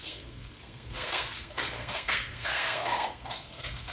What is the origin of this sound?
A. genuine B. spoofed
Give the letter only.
B